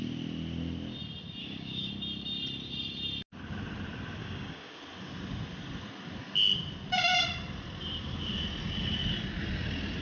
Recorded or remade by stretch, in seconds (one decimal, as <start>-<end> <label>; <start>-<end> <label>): 0.0-1.4 recorded; 1.4-1.9 remade; 1.9-4.2 recorded; 4.2-4.8 remade; 4.8-10.0 recorded